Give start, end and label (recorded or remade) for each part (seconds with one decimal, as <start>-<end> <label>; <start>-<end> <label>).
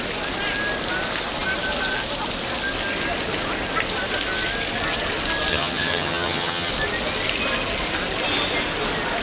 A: 0.0-5.5 recorded; 5.5-6.7 remade; 6.7-9.2 recorded